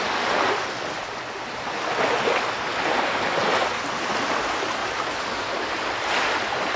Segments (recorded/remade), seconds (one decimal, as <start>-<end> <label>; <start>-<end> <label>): 0.0-6.8 recorded